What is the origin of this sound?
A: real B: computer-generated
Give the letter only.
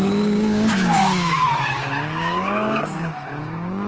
B